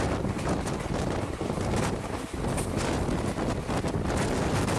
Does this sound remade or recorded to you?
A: recorded